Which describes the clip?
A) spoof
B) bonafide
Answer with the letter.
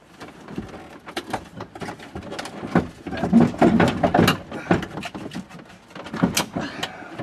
B